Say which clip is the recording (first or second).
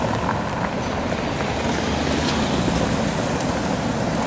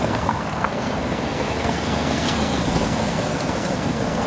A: first